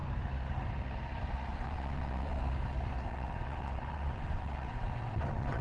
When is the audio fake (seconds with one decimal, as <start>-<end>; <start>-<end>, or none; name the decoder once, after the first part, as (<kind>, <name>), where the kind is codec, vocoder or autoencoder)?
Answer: 1.5-2.4 (vocoder, WaveNeXt); 3.1-5.6